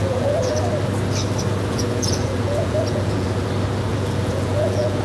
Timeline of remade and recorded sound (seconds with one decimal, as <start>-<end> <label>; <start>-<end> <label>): 0.0-0.6 remade; 0.6-1.7 recorded; 1.7-3.5 remade; 3.5-3.9 recorded; 3.9-5.0 remade